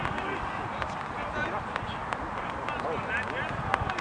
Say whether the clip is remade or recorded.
recorded